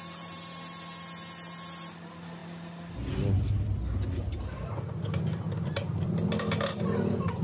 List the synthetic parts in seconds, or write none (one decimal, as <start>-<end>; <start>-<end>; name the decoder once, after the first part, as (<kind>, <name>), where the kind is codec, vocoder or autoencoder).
none